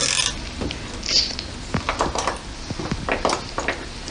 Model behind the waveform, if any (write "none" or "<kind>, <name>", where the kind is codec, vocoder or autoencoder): none